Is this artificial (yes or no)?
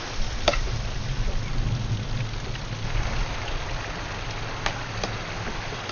no